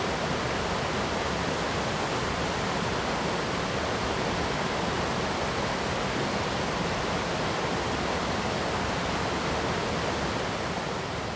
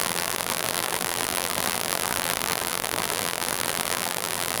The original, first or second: first